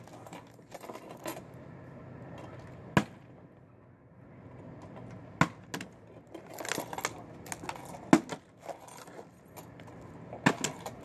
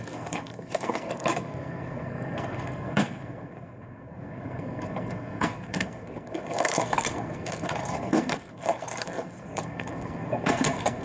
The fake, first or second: second